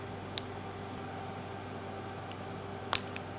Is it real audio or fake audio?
real